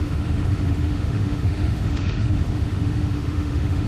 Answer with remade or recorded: remade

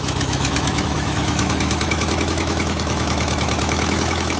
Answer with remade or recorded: remade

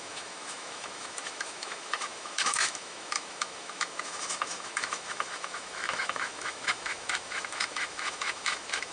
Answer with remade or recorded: remade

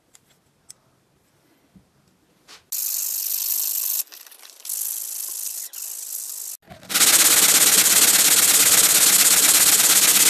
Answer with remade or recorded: recorded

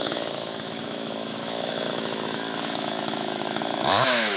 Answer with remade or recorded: remade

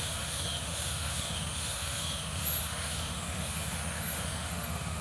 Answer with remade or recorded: remade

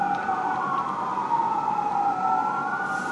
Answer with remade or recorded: recorded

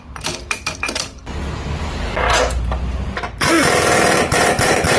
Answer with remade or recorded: recorded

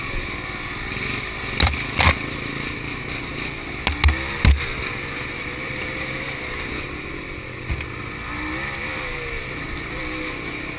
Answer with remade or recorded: recorded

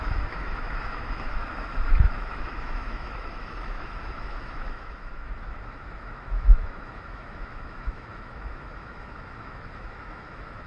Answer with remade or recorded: remade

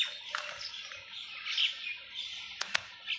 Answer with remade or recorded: recorded